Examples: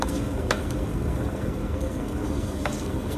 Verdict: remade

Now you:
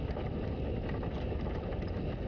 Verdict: recorded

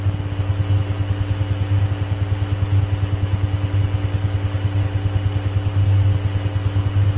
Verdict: recorded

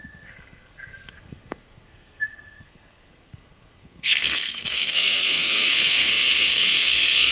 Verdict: remade